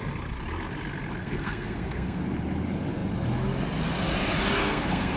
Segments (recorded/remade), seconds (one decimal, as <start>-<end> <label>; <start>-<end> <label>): 0.0-1.2 recorded; 1.2-2.2 remade; 2.2-4.6 recorded; 4.6-5.2 remade